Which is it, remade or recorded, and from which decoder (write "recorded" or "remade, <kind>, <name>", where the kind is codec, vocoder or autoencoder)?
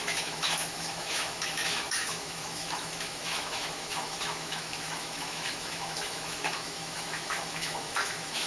remade, autoencoder, DAC-VAE